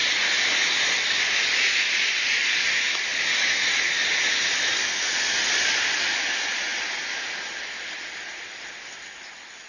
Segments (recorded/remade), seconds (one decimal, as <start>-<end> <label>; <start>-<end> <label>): 0.0-9.7 recorded